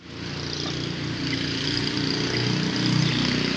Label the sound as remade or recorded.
recorded